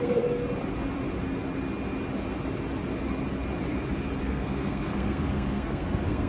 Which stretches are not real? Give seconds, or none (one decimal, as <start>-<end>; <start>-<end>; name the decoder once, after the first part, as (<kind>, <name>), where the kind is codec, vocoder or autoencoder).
0.0-0.4 (codec, SNAC); 4.2-6.3